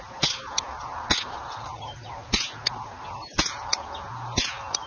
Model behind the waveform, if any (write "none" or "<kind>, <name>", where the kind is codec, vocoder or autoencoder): none